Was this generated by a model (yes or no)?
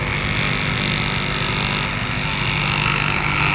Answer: no